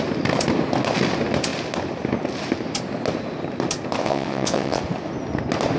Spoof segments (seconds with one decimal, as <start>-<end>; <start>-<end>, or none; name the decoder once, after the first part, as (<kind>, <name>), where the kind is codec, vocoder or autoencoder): 4.0-4.8 (vocoder, WaveNeXt)